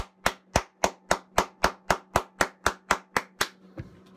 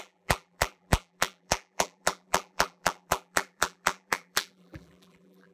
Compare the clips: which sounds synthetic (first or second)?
second